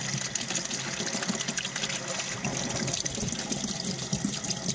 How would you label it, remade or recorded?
recorded